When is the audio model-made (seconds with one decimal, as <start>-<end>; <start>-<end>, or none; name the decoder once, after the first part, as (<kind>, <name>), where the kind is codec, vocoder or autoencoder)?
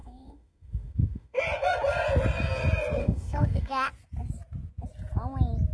0.0-1.4 (autoencoder, DAC-VAE); 3.0-3.9